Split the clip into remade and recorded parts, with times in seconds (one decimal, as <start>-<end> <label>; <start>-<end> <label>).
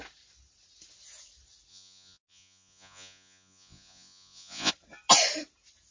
0.0-1.7 recorded; 1.7-4.7 remade; 4.7-5.9 recorded